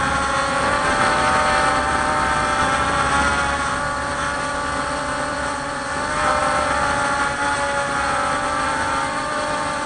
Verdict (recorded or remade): recorded